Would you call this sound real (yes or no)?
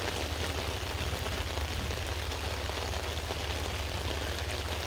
yes